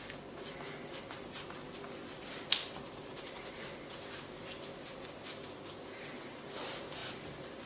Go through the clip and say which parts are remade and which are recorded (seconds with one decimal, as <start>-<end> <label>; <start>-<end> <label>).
0.0-7.7 recorded